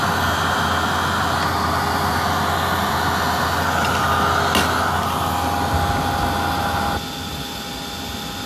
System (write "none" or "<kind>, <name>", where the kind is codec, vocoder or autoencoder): none